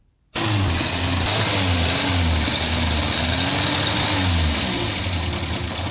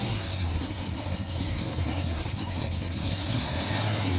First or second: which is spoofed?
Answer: second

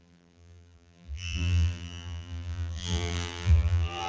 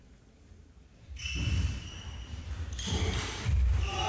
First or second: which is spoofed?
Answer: first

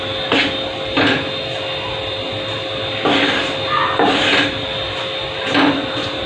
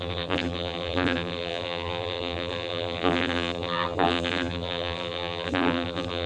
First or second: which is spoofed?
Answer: second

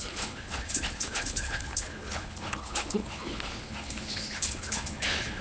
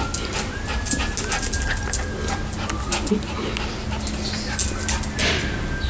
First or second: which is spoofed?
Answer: first